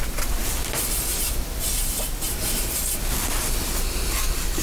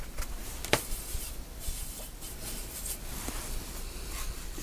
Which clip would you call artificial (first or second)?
second